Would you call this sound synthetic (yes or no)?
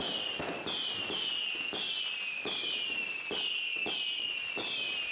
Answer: no